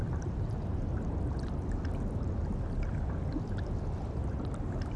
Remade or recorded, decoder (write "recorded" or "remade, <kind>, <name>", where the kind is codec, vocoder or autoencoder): recorded